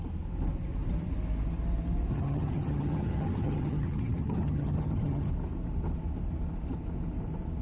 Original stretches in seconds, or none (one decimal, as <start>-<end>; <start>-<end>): 0.0-2.1; 5.3-7.6